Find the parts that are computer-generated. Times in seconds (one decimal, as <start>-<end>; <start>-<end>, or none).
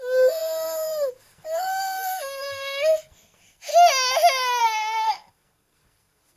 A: 0.0-3.7; 4.6-6.4